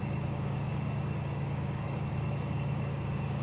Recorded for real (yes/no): no